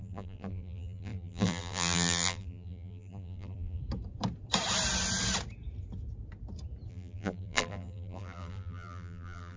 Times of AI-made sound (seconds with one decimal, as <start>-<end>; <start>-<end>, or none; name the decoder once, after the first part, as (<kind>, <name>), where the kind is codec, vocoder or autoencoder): 0.0-3.8 (vocoder, BigVGAN v2); 6.9-9.6